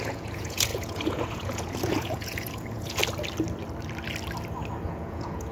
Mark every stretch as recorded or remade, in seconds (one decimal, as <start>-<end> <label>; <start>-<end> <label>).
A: 0.0-3.0 remade; 3.0-4.8 recorded; 4.8-5.5 remade